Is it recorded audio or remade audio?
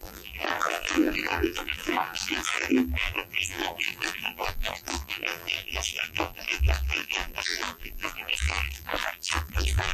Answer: remade